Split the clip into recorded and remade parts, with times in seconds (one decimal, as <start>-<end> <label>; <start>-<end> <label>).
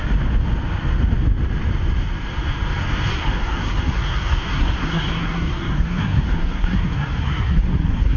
0.0-3.1 recorded; 3.1-8.2 remade